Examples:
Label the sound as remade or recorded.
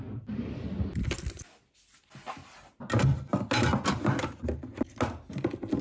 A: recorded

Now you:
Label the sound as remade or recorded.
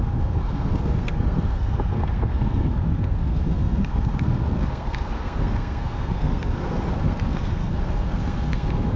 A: remade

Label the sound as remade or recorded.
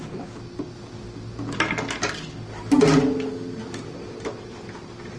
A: recorded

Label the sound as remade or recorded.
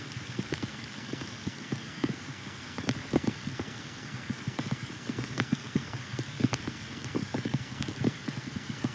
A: remade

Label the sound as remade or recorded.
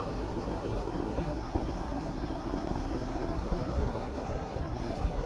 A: remade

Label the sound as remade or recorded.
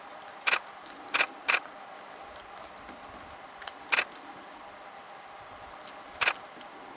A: recorded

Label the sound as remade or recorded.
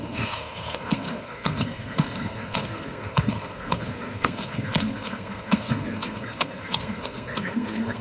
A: remade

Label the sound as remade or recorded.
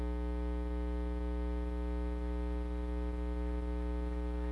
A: recorded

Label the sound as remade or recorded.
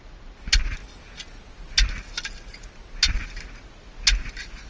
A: recorded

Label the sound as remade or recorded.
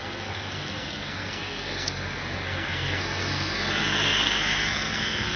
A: remade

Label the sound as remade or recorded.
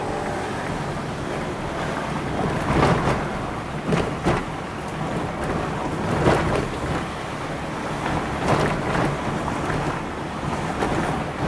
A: recorded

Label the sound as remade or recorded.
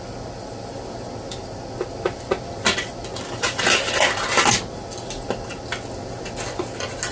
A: recorded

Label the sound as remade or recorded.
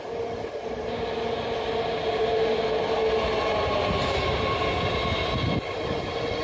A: recorded